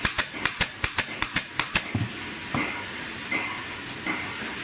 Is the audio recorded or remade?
recorded